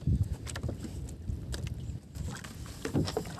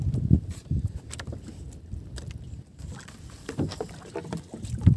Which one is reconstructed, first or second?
second